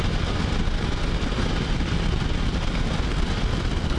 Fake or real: real